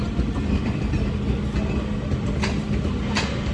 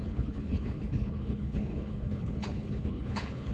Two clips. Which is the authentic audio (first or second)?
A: first